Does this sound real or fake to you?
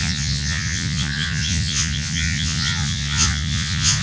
fake